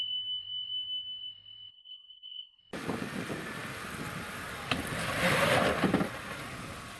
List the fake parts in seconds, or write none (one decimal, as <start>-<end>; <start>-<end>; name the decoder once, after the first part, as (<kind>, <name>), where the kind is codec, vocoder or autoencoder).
1.7-2.6 (codec, SNAC)